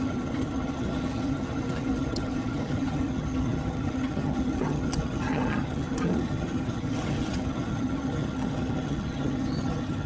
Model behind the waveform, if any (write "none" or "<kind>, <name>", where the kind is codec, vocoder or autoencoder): vocoder, HiFi-GAN